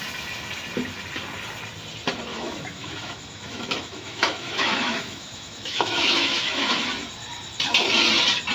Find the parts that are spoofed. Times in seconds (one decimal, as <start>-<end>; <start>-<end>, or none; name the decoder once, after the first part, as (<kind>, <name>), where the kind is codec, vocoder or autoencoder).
2.3-6.9 (autoencoder, DAC-VAE)

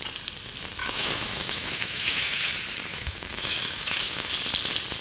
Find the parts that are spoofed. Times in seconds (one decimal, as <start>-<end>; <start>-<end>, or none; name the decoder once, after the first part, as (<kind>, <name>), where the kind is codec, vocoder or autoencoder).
0.8-2.5 (autoencoder, DAC-VAE); 2.9-4.3

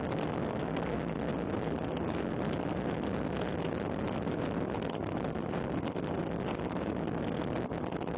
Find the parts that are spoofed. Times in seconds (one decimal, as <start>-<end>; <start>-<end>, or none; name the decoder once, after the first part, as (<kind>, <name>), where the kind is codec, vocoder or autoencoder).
none